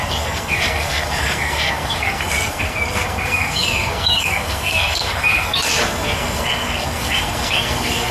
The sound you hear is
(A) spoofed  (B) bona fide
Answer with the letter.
A